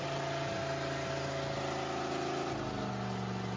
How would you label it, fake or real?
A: real